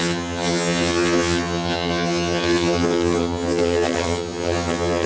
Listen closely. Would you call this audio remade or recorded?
remade